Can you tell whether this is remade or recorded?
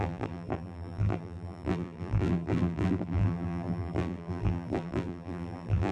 remade